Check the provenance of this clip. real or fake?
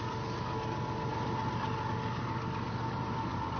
real